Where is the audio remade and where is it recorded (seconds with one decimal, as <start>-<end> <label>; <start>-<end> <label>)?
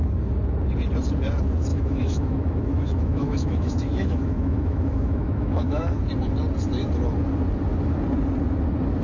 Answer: 0.0-1.7 recorded; 1.7-6.0 remade; 6.0-9.0 recorded